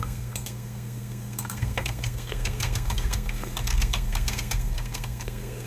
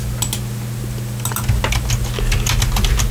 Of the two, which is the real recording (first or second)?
second